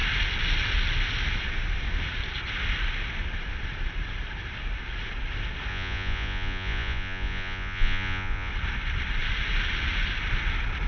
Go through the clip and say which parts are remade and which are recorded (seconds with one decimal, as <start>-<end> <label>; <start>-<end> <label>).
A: 0.0-5.7 recorded; 5.7-8.5 remade; 8.5-10.9 recorded